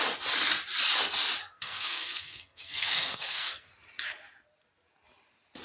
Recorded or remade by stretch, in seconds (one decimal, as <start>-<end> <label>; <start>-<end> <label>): 0.0-1.4 recorded; 1.4-3.7 remade; 3.7-5.6 recorded